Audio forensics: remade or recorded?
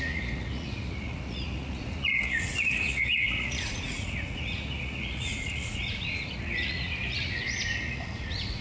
remade